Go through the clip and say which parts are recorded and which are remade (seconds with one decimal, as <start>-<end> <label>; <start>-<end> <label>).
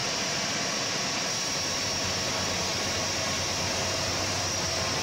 0.0-5.0 recorded